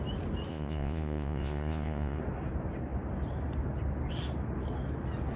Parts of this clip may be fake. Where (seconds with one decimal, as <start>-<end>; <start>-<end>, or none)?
0.5-2.2